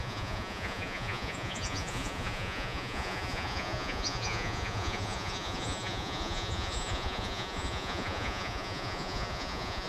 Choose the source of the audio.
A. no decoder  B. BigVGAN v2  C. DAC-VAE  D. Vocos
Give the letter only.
D